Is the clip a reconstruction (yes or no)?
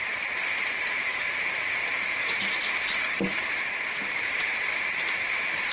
yes